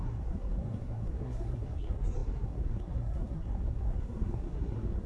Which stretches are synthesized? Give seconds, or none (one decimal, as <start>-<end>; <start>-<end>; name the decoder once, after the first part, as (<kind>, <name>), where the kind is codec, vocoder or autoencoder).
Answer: 0.0-5.1 (codec, SNAC)